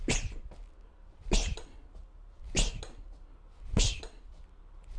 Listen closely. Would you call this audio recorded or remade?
recorded